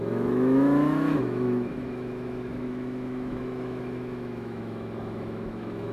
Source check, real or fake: fake